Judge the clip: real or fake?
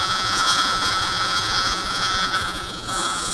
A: fake